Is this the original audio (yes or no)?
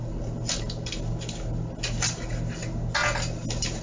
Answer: yes